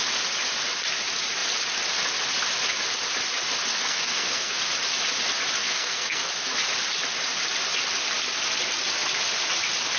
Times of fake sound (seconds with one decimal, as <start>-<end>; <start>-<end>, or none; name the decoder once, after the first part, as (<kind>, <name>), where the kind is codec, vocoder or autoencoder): 3.8-4.6 (codec, SNAC); 5.6-6.3